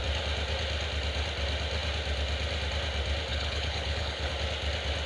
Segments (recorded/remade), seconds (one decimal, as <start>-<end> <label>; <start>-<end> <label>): 0.0-3.3 recorded; 3.3-4.3 remade; 4.3-5.1 recorded